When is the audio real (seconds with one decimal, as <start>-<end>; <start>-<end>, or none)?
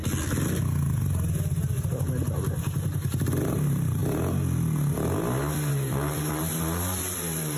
0.0-3.5; 4.0-5.7